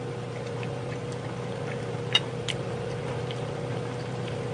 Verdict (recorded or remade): remade